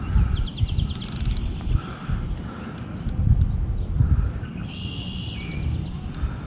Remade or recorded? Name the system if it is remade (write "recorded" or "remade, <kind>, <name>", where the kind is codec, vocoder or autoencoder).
recorded